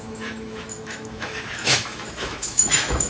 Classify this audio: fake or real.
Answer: fake